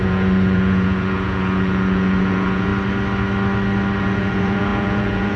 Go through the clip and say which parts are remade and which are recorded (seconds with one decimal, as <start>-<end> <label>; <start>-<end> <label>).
0.0-2.7 remade; 2.7-4.0 recorded; 4.0-5.4 remade